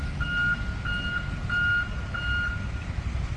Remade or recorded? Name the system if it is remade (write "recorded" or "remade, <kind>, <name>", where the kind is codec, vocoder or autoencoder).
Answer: recorded